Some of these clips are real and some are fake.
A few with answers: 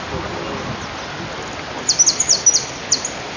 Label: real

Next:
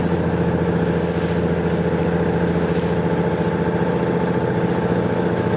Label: real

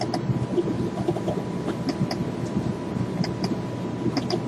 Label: real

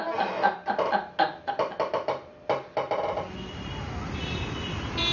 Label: real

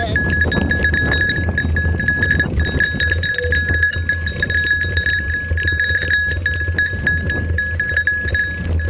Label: real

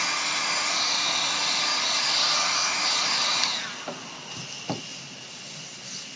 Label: real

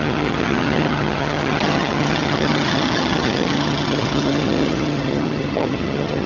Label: fake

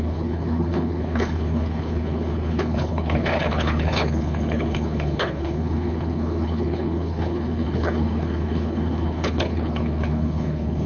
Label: fake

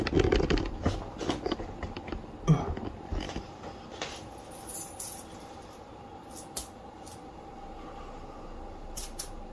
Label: real